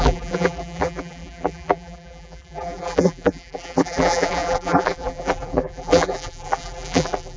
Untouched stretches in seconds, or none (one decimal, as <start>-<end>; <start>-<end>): none